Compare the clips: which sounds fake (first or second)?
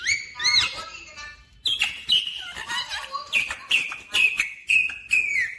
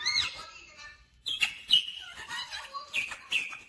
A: second